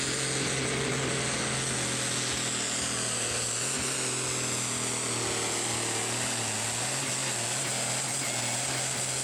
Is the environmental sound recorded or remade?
recorded